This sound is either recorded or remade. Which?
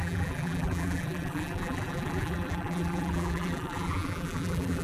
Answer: remade